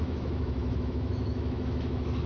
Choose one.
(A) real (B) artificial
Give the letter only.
B